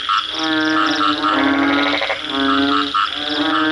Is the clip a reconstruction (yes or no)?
no